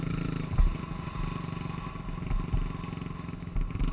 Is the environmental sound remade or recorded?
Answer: recorded